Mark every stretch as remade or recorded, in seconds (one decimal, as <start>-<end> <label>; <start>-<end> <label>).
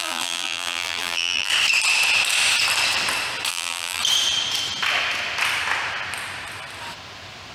0.0-1.5 remade; 1.5-3.5 recorded; 3.5-4.0 remade; 4.0-7.5 recorded